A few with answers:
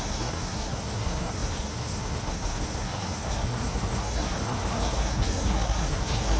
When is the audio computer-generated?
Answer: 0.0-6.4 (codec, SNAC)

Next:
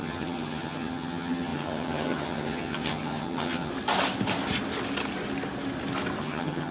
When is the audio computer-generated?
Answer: 0.0-3.7 (vocoder, HiFi-GAN); 6.2-6.7

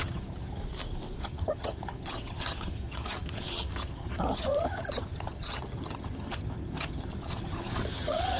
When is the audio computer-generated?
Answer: 0.0-0.6 (vocoder, HiFi-GAN); 1.2-8.4

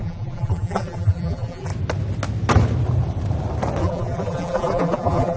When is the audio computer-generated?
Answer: 0.0-1.7 (vocoder, BigVGAN v2); 3.8-5.4